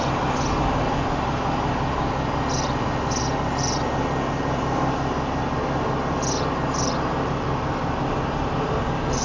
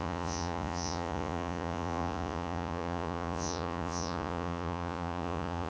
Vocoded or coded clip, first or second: second